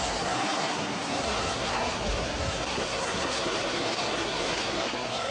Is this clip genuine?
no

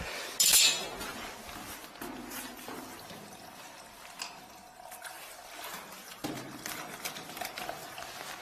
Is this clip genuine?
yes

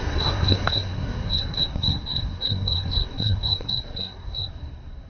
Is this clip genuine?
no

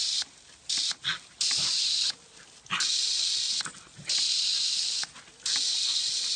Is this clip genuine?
yes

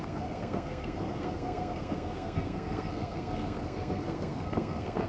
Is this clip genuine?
no